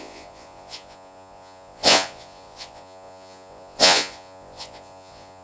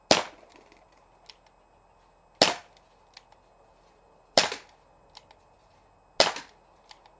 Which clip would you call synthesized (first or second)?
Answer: first